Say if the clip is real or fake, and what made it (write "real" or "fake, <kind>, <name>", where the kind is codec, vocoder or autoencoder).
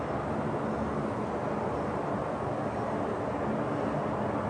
real